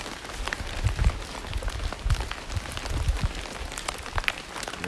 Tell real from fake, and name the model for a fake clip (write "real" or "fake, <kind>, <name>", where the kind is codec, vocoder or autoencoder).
real